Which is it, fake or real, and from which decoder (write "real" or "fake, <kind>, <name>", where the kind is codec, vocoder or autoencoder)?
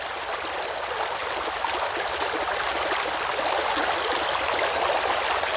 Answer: real